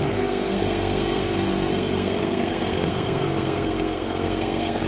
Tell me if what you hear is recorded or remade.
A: remade